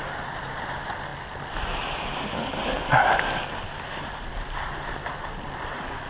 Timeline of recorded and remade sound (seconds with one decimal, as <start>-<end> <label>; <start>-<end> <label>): 0.0-6.1 recorded